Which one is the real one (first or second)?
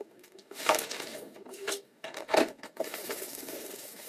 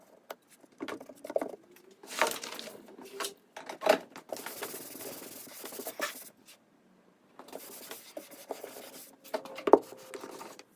second